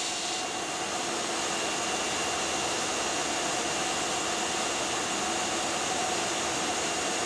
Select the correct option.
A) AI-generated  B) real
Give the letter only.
B